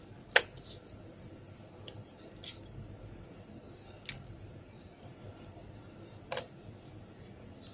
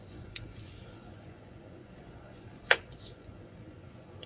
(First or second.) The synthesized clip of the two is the second